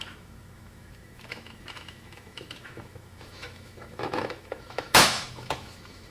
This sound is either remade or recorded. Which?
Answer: remade